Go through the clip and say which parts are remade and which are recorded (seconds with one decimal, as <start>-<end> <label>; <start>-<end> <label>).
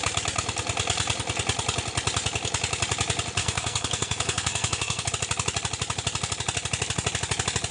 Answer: 0.0-3.4 recorded; 3.4-5.1 remade; 5.1-7.7 recorded